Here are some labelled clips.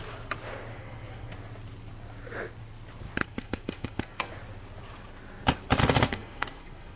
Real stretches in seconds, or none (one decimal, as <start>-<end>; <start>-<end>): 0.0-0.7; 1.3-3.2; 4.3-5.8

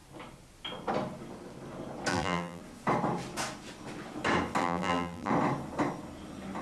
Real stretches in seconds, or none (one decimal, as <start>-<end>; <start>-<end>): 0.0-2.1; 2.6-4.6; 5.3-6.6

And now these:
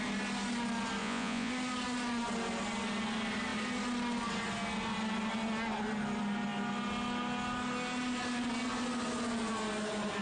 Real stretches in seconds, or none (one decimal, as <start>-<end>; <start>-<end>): 0.0-1.0; 1.5-10.2

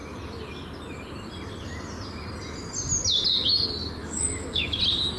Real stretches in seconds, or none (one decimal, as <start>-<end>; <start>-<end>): 0.0-4.0; 4.8-5.2

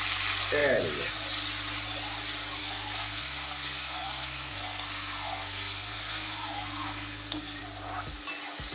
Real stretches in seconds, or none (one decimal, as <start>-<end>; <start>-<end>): 0.0-2.6; 7.6-8.7

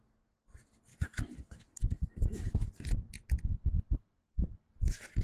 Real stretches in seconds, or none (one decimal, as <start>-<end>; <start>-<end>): 0.0-0.9; 2.7-3.5; 4.8-5.2